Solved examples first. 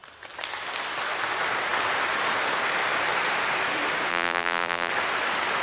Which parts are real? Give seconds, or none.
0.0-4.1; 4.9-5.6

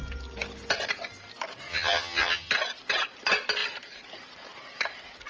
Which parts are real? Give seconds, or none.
0.0-1.7; 2.5-5.3

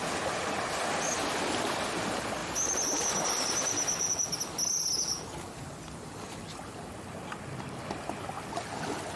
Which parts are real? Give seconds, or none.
0.0-9.2

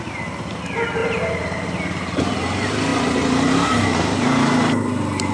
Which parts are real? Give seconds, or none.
0.0-5.3

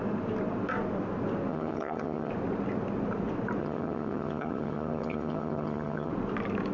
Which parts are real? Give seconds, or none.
0.0-1.5; 2.3-3.6; 6.1-6.7

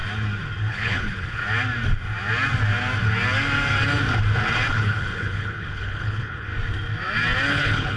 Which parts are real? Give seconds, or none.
0.0-0.7; 1.4-4.7; 6.5-7.5

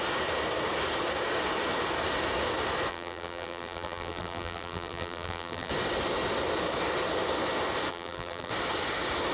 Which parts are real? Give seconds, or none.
0.0-2.9; 5.7-7.9; 8.5-9.3